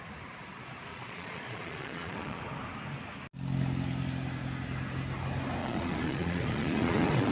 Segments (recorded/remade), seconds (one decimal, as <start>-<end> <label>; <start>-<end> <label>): 0.0-0.9 recorded; 0.9-2.4 remade; 2.4-5.6 recorded; 5.6-7.3 remade